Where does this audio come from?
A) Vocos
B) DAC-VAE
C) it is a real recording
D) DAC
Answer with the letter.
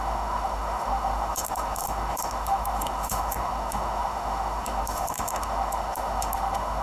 B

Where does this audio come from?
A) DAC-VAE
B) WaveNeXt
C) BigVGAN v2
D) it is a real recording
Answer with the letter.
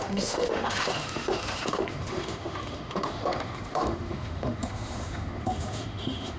A